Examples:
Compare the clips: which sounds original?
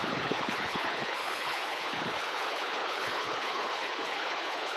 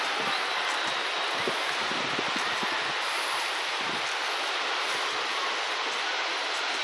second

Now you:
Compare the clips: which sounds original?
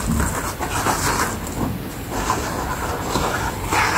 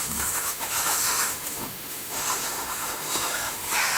first